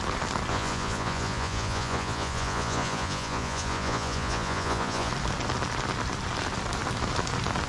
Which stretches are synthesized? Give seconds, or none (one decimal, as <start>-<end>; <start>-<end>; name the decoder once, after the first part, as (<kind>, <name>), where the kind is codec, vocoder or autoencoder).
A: 0.5-5.1 (vocoder, Vocos)